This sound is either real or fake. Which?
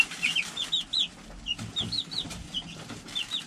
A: real